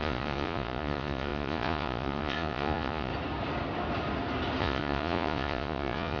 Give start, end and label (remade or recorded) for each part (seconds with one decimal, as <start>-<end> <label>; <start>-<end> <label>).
0.0-3.1 remade; 3.1-4.6 recorded; 4.6-6.2 remade